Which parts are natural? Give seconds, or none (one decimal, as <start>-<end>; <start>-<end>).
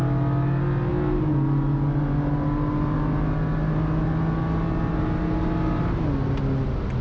0.0-7.0